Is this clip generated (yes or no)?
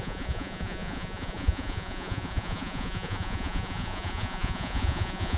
yes